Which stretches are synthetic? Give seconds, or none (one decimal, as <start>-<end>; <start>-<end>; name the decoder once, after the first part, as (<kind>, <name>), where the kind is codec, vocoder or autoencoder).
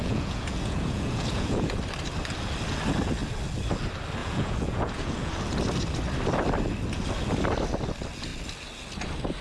0.0-1.8 (vocoder, Vocos); 4.2-5.3